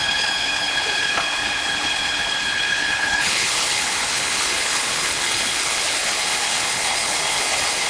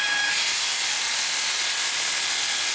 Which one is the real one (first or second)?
second